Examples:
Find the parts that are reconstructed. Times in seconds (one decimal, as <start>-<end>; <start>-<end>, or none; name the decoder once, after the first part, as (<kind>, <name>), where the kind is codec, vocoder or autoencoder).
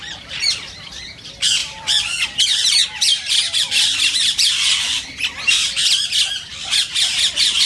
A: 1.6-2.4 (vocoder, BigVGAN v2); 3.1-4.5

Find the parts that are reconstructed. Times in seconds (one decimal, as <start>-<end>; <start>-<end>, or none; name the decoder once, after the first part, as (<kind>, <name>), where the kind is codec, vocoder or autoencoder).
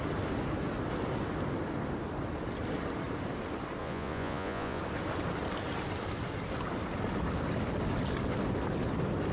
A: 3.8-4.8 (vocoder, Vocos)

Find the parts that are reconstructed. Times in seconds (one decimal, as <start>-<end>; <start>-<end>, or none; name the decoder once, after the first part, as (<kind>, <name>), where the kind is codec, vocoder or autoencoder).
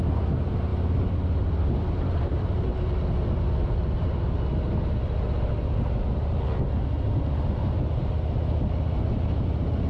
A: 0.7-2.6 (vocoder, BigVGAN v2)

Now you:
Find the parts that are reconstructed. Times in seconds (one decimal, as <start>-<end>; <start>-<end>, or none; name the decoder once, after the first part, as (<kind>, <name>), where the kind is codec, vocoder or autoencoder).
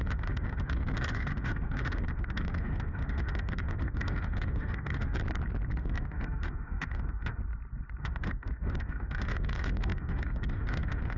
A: 0.0-5.2 (autoencoder, DAC-VAE); 5.8-7.4; 8.0-11.2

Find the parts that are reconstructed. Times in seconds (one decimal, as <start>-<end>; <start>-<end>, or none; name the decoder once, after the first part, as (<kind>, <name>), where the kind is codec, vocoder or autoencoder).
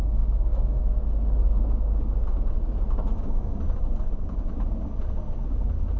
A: 0.0-0.8 (autoencoder, DAC-VAE); 3.1-3.6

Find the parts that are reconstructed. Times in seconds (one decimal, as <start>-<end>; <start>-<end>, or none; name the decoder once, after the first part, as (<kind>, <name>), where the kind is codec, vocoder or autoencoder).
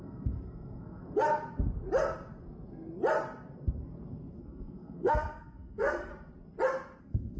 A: 0.0-1.0 (codec, SNAC); 4.4-6.1; 7.0-7.4